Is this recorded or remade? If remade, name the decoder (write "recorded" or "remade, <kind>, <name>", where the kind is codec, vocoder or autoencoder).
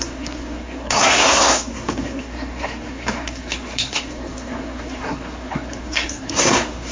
remade, codec, SNAC